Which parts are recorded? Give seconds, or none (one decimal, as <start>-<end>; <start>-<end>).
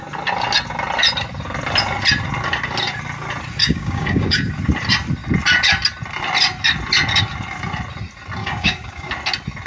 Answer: 0.0-3.6; 4.5-8.4; 9.1-9.7